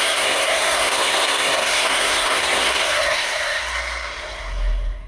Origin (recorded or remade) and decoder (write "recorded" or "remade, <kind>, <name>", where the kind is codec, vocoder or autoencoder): remade, codec, SNAC